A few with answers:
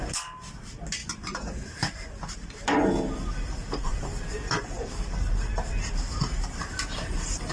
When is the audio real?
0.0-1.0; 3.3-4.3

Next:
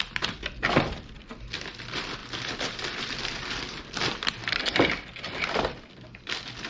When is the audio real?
none

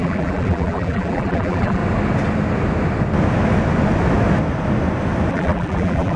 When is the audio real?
1.8-5.3

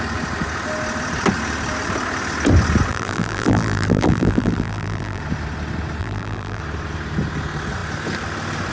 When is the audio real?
0.0-2.9; 5.2-6.0; 6.6-8.7

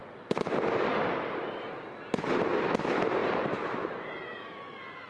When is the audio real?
0.0-3.2; 3.9-5.1